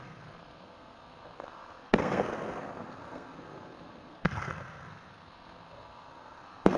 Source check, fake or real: fake